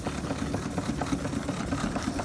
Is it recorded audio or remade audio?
recorded